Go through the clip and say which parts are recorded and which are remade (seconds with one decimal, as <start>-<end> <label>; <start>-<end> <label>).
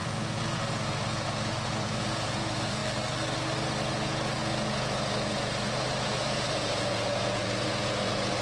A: 0.0-2.8 remade; 2.8-3.9 recorded; 3.9-8.4 remade